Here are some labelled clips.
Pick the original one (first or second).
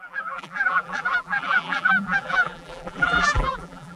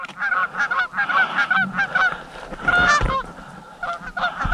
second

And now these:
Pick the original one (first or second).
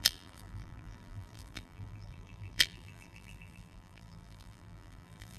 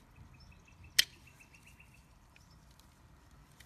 second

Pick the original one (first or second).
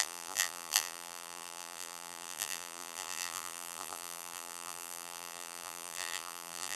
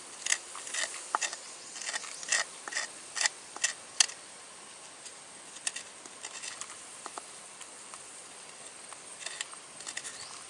second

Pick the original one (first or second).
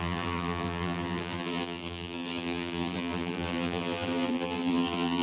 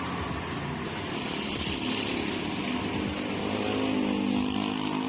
second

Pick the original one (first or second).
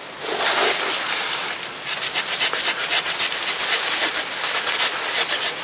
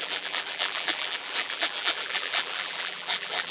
first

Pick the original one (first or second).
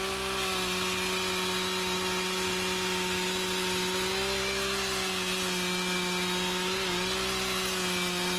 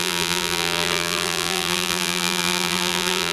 first